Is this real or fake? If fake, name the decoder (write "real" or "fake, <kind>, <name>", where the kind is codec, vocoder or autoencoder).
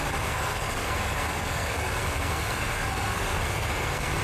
fake, codec, SNAC